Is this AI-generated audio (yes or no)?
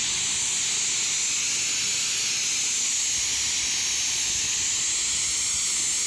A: no